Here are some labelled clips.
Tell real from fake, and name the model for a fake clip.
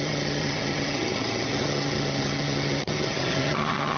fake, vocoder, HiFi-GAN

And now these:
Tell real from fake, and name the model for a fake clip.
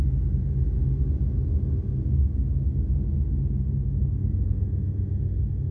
real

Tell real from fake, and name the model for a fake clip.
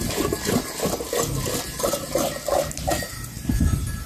real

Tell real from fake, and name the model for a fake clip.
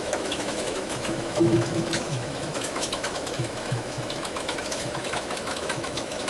fake, autoencoder, DAC-VAE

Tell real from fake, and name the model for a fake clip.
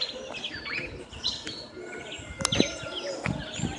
real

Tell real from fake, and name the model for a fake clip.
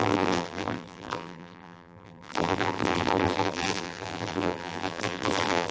fake, vocoder, BigVGAN v2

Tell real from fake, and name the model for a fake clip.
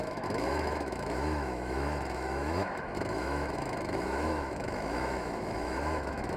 fake, autoencoder, DAC-VAE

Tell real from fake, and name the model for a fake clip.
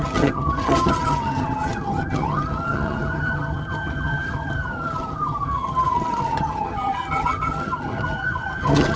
fake, vocoder, HiFi-GAN